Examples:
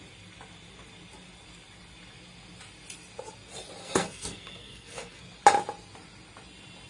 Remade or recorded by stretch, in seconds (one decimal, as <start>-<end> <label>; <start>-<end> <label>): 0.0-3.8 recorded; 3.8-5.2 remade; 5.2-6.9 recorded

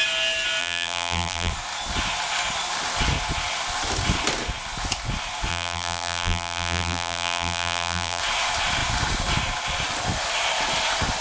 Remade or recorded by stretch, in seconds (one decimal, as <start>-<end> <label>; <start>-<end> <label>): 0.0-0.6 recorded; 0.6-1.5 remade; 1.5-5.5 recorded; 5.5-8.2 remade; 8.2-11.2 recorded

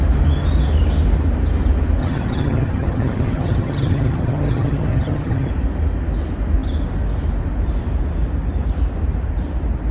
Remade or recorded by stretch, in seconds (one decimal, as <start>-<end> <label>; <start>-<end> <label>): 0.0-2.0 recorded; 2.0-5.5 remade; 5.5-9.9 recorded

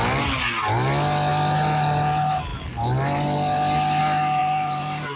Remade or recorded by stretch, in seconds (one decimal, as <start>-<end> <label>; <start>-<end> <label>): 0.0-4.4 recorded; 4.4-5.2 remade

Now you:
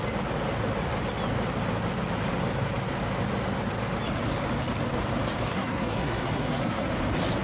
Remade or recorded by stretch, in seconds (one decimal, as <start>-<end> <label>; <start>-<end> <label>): 0.0-5.5 recorded; 5.5-6.9 remade; 6.9-7.4 recorded

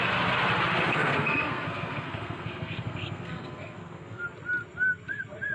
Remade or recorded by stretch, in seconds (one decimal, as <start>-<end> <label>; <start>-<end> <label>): 0.0-0.9 recorded; 0.9-4.2 remade; 4.2-5.5 recorded

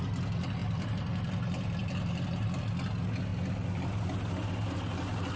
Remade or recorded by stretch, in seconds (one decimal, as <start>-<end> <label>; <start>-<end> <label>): 0.0-0.6 recorded; 0.6-2.6 remade; 2.6-3.3 recorded; 3.3-4.7 remade; 4.7-5.4 recorded